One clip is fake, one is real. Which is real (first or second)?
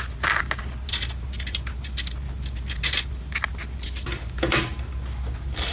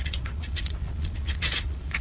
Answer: first